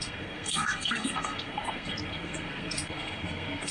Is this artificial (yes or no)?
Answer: yes